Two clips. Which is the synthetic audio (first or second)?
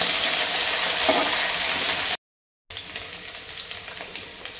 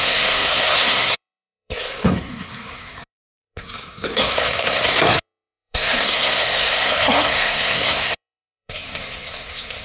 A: second